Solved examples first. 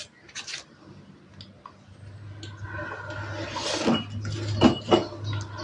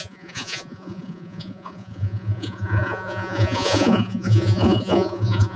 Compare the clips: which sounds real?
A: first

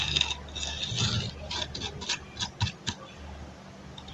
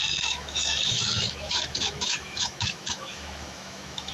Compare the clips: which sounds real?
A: first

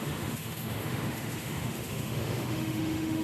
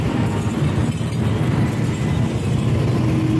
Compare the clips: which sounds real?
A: second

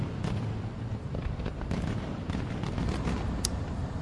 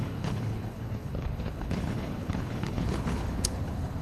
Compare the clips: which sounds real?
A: first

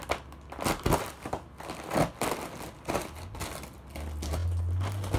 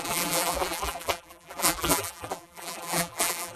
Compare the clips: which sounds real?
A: first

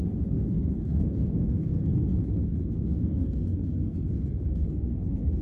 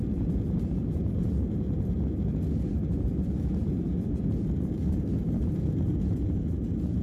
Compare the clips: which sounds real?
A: second